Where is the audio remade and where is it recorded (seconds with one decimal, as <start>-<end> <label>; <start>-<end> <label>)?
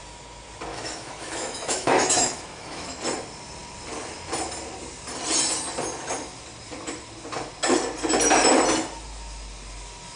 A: 0.0-0.7 recorded; 0.7-3.0 remade; 3.0-10.2 recorded